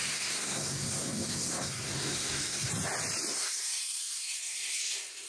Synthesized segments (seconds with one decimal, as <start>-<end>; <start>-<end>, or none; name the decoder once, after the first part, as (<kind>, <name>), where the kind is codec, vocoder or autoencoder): 0.0-2.7 (codec, SNAC); 3.3-5.3